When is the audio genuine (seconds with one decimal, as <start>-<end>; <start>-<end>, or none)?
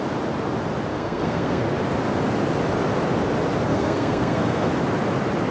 0.0-0.9; 1.6-3.7; 4.7-5.5